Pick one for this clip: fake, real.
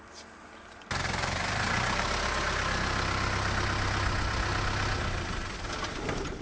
real